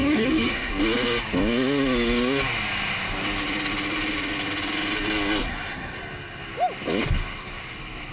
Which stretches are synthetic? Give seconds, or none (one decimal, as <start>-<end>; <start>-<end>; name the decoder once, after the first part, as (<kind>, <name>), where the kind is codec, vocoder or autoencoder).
0.0-0.7 (codec, SNAC); 5.4-6.0